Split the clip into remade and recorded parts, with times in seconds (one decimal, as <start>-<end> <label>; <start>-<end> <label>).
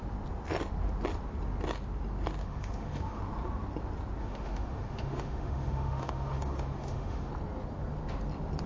0.0-2.4 recorded; 2.4-3.2 remade; 3.2-4.2 recorded; 4.2-7.3 remade; 7.3-8.7 recorded